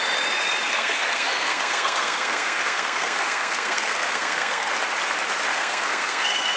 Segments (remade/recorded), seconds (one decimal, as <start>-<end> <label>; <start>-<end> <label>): 0.0-0.7 recorded; 0.7-4.7 remade; 4.7-5.5 recorded; 5.5-6.6 remade